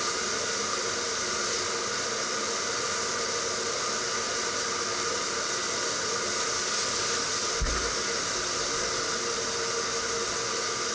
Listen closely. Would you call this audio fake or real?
real